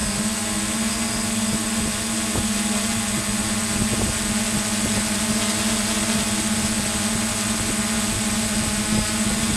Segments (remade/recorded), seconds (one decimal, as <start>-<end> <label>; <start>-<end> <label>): 0.0-9.6 recorded